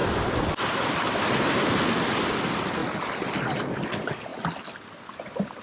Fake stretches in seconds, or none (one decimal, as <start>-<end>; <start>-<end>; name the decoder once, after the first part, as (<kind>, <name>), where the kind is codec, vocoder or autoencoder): 0.0-1.3 (vocoder, BigVGAN v2); 2.8-3.7